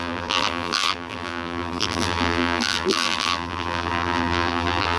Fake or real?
fake